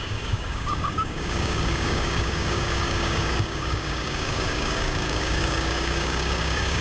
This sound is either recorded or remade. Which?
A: remade